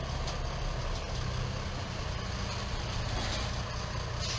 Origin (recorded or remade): recorded